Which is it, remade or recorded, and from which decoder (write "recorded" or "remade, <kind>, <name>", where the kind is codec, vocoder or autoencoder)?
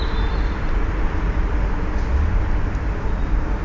recorded